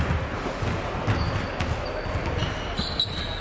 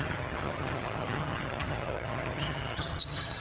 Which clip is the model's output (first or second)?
second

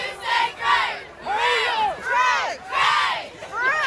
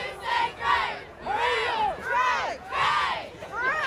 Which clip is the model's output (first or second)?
second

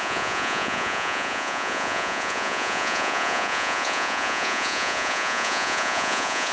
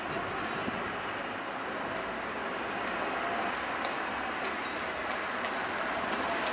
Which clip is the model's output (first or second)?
first